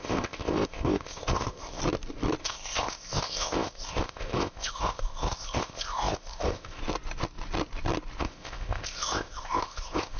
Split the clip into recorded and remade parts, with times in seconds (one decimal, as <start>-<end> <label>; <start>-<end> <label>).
0.0-1.8 remade; 1.8-2.4 recorded; 2.4-6.8 remade; 6.8-8.2 recorded; 8.2-10.2 remade